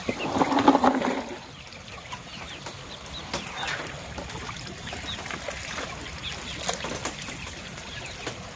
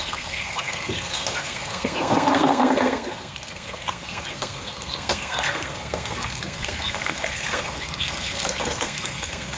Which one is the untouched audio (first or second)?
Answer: first